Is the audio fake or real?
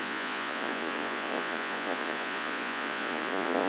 fake